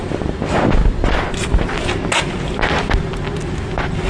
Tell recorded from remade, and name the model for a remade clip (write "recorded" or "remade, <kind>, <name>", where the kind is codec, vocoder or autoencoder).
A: recorded